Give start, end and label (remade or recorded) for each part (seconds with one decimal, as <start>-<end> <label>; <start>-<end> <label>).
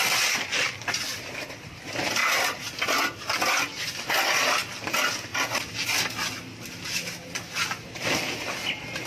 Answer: 0.0-9.1 recorded